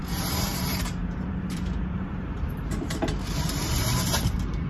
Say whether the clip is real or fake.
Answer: fake